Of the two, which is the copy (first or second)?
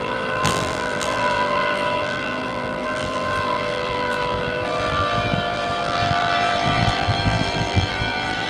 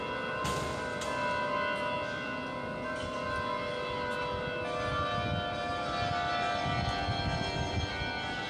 first